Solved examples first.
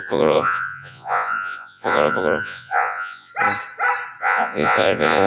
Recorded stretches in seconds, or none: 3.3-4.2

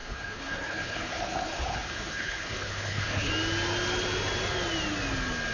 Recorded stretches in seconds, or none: 3.3-5.5